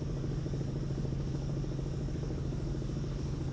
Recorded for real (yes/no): no